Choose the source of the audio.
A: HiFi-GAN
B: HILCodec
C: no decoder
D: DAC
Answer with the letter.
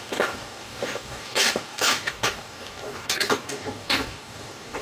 D